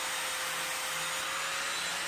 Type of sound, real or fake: real